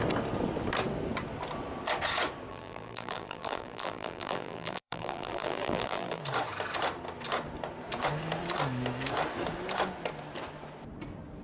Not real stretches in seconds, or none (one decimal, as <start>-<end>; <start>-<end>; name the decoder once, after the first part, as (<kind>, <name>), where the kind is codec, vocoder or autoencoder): 2.5-6.2 (vocoder, BigVGAN v2)

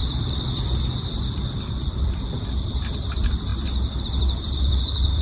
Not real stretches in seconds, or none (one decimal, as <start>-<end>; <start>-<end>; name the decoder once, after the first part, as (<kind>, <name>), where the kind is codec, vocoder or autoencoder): 0.0-3.5 (vocoder, BigVGAN v2); 4.0-5.2